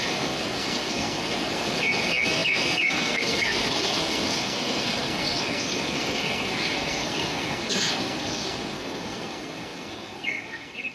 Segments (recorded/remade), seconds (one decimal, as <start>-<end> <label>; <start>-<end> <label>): 0.0-10.9 remade